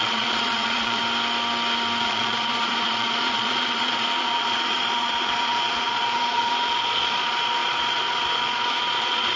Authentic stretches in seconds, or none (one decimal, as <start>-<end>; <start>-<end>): 1.0-2.0